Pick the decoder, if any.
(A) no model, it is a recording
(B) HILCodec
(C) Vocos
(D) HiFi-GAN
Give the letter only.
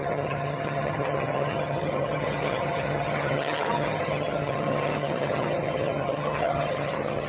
D